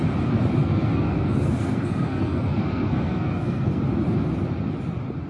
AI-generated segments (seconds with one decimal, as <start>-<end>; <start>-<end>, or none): 0.6-3.8